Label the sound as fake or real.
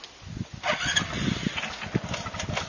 real